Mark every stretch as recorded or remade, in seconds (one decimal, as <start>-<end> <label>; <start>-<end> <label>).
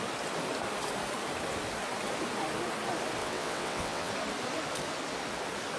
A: 0.0-3.2 recorded; 3.2-4.1 remade; 4.1-5.8 recorded